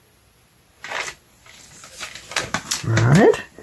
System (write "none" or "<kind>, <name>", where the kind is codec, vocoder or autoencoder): none